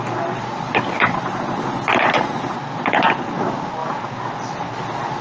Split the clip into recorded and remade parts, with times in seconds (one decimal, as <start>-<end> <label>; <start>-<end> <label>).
0.0-5.2 recorded